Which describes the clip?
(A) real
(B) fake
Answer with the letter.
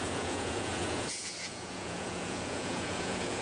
B